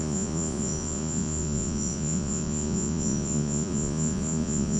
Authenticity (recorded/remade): remade